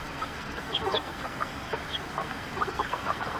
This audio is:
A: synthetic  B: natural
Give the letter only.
A